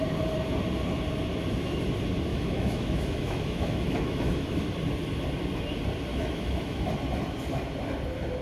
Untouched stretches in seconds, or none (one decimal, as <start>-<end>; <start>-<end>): 0.0-2.3; 4.6-6.1; 6.9-8.4